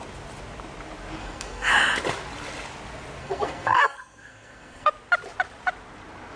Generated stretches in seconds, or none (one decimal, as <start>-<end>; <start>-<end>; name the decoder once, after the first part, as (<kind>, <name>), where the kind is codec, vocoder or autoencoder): 1.2-1.7 (codec, SNAC); 3.2-4.9